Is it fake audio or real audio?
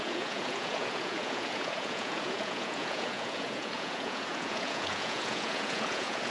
fake